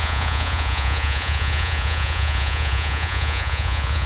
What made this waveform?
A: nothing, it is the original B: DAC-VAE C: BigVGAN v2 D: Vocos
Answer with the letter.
D